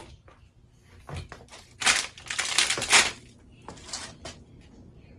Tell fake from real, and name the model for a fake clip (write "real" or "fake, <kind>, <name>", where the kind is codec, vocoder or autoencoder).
real